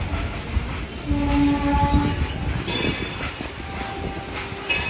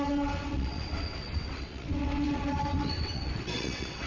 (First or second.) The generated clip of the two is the second